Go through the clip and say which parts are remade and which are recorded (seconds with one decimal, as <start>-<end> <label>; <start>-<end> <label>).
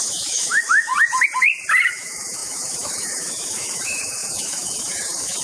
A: 0.0-0.9 remade; 0.9-1.9 recorded; 1.9-5.4 remade